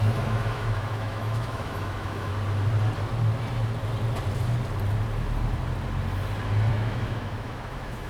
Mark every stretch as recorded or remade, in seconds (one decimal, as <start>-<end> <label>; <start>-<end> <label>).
0.0-2.3 remade; 2.3-6.7 recorded; 6.7-8.1 remade